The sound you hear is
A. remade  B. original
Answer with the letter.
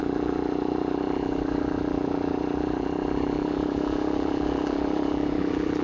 A